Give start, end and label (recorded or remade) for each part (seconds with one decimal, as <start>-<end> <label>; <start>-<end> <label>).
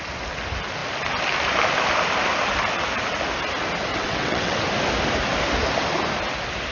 0.0-3.9 recorded; 3.9-4.6 remade; 4.6-6.7 recorded